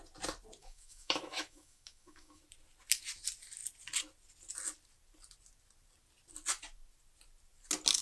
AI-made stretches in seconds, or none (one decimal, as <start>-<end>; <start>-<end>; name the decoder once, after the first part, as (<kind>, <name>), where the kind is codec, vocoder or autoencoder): 0.6-2.4 (autoencoder, DAC-VAE)